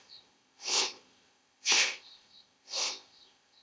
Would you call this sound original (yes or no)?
no